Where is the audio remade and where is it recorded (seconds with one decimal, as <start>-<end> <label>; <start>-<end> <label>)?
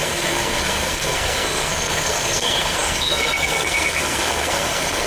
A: 0.0-5.1 remade